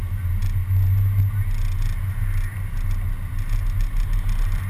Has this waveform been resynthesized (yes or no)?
no